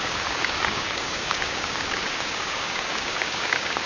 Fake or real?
fake